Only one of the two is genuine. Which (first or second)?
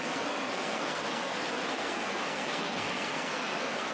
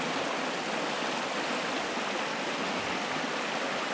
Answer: second